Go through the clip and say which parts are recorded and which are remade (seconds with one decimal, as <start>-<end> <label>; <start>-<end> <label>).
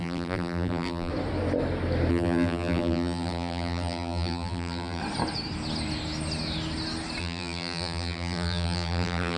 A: 0.0-1.1 remade; 1.1-2.1 recorded; 2.1-5.0 remade; 5.0-7.2 recorded; 7.2-9.4 remade